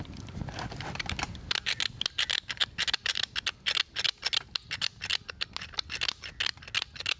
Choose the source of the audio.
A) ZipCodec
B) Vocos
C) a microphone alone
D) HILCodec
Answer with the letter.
C